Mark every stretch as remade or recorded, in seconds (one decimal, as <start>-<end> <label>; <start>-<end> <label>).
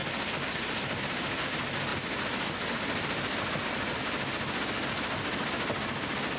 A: 0.0-1.9 recorded; 1.9-4.0 remade; 4.0-6.4 recorded